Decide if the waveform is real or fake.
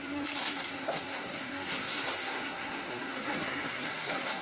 fake